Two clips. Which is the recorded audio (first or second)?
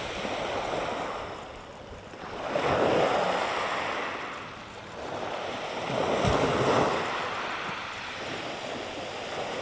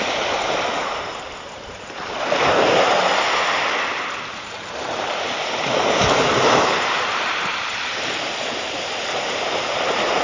first